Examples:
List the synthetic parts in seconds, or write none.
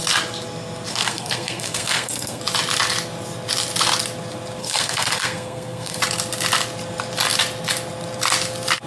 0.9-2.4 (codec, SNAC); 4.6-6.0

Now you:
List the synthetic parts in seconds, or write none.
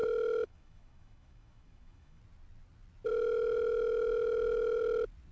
0.0-2.2 (autoencoder, DAC-VAE); 3.1-4.8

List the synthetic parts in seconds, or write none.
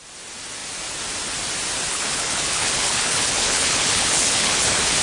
1.9-5.0 (codec, HILCodec)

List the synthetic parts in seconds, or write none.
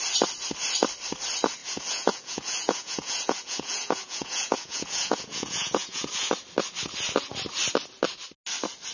1.6-6.3 (vocoder, Vocos)